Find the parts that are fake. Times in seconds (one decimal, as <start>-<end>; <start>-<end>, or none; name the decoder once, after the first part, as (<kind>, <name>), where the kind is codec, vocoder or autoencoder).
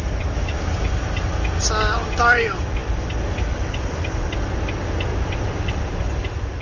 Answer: none